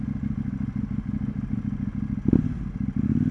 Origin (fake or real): real